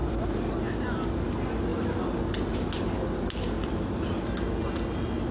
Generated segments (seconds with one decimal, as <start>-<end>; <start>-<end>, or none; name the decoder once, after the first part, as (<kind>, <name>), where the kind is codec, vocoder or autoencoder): none